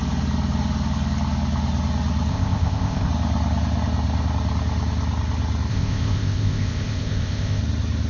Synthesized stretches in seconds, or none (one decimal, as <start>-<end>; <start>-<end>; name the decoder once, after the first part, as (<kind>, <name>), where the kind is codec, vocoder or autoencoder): 2.3-3.1 (codec, ZipCodec); 5.7-7.6